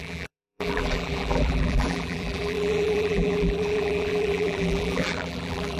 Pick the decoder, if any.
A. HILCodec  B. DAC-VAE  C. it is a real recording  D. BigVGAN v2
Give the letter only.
D